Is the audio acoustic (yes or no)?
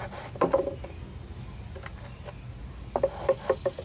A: yes